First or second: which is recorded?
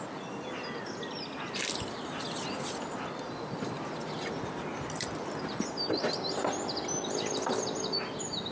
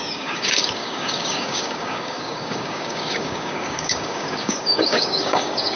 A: first